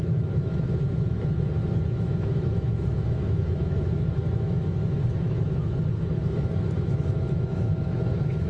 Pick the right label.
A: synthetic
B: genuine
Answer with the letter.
A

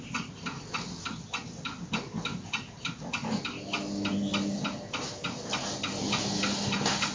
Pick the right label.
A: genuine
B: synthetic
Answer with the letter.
A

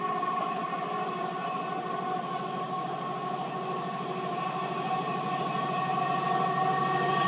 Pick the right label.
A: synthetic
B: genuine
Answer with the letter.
B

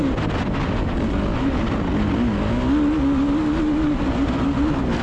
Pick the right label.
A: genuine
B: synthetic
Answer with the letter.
A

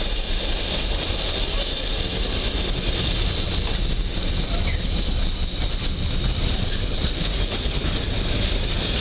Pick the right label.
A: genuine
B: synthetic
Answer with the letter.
A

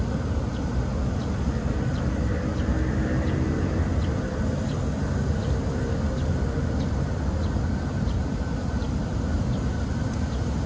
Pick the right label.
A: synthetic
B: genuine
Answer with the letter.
B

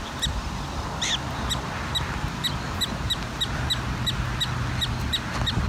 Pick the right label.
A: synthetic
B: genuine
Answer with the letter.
B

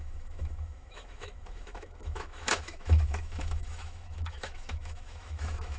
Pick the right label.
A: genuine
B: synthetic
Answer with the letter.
B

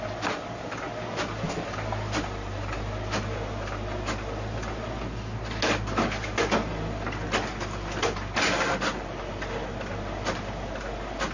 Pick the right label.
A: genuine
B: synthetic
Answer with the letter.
A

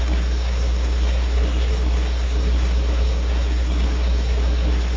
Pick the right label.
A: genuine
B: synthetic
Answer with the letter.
B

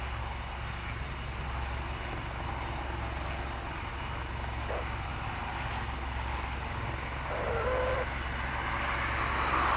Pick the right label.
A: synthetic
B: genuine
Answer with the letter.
B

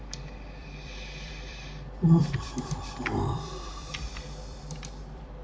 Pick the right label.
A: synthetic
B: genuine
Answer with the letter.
A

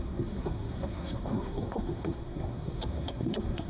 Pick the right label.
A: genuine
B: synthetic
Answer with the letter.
B